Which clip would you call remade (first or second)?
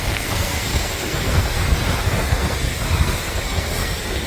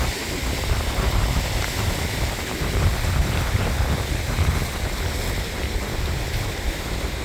first